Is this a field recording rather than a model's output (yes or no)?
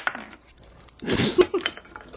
yes